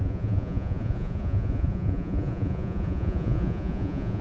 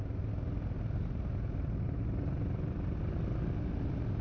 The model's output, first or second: first